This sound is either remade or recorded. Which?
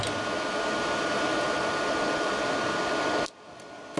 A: recorded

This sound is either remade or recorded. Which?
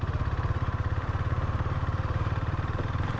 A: remade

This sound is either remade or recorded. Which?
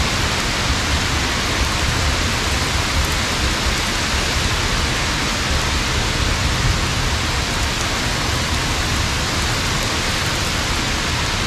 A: recorded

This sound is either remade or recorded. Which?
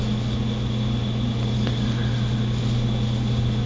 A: recorded